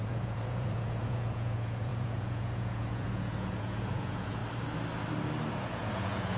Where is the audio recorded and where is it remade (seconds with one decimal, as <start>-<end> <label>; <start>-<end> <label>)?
0.0-4.4 remade; 4.4-5.5 recorded; 5.5-6.4 remade